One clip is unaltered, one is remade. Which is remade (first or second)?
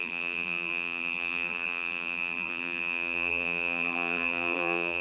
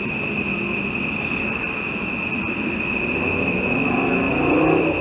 first